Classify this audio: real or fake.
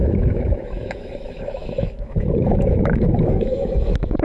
fake